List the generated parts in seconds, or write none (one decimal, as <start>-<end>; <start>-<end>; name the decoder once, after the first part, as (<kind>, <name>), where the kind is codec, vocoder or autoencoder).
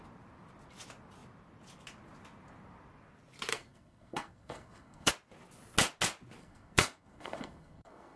3.5-5.1 (codec, SNAC); 6.4-8.2